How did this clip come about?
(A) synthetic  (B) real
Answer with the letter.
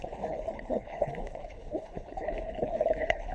A